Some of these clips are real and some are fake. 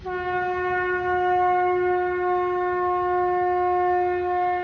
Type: real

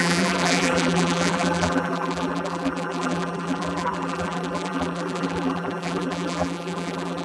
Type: fake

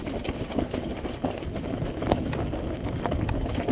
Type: real